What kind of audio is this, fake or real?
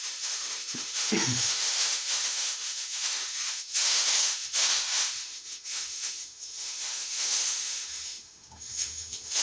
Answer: fake